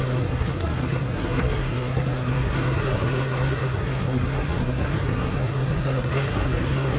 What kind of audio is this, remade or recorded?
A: remade